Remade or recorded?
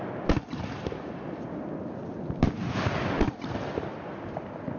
recorded